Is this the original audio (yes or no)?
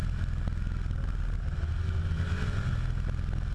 yes